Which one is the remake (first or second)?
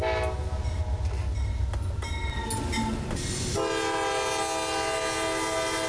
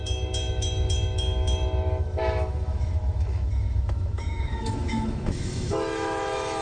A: second